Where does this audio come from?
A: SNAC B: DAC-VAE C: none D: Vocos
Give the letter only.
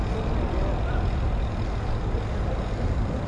C